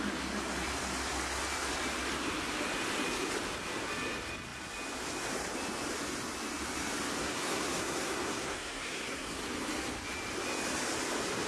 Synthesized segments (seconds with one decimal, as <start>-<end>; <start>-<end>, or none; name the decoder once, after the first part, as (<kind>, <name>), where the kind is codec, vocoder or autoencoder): 7.2-9.4 (codec, SNAC)